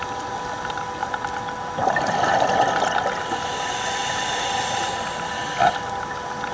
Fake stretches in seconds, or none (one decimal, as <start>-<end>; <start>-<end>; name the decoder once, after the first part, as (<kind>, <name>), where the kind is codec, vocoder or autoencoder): none